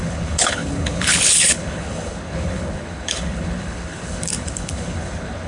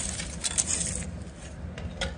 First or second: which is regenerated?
first